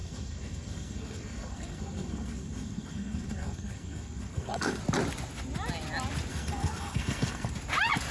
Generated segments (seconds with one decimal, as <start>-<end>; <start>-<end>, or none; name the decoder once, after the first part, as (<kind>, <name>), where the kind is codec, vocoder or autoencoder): 0.0-4.8 (codec, SNAC); 6.3-7.5